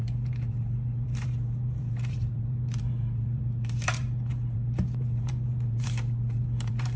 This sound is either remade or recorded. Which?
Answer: remade